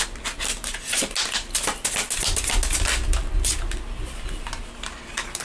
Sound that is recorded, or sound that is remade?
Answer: recorded